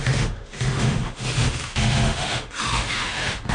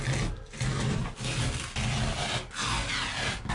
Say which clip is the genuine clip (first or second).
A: second